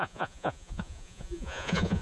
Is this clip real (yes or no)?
no